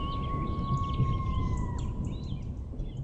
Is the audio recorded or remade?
recorded